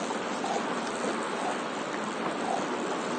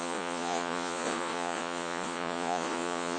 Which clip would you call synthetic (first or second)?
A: second